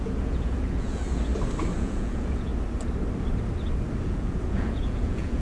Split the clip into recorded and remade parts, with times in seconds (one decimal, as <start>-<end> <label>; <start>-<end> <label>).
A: 0.0-1.3 remade; 1.3-1.8 recorded; 1.8-2.5 remade; 2.5-4.0 recorded; 4.0-5.4 remade